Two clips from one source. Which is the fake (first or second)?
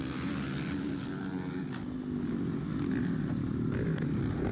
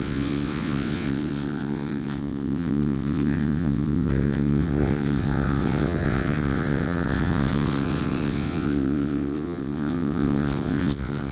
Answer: second